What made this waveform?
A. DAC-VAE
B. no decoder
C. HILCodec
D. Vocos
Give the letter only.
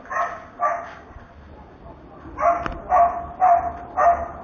B